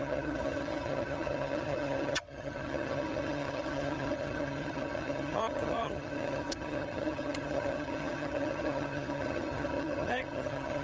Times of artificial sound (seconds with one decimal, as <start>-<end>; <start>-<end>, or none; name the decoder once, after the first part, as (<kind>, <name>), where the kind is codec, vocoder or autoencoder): 0.0-10.8 (vocoder, HiFi-GAN)